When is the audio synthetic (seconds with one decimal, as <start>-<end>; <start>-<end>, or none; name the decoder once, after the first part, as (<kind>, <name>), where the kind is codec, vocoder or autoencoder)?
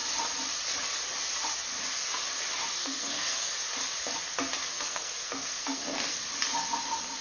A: 2.8-3.5 (codec, SNAC); 4.6-6.2